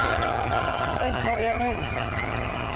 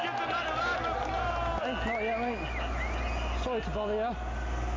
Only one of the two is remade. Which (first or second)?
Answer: first